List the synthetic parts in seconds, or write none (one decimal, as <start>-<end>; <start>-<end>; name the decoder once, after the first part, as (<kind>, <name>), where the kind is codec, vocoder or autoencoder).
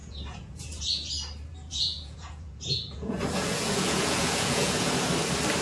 0.0-0.8 (vocoder, Vocos); 1.5-4.9